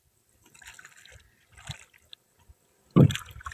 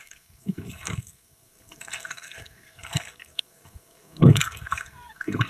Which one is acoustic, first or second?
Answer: first